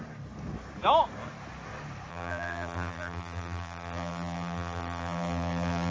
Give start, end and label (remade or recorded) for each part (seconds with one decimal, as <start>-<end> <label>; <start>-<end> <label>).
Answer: 0.0-2.1 recorded; 2.1-5.9 remade